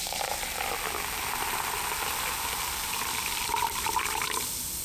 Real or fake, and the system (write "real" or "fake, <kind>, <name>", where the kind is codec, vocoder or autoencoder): real